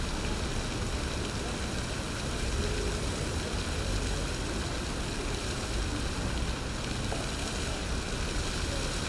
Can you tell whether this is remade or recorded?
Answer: recorded